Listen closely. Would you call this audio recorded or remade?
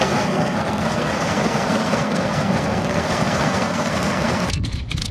remade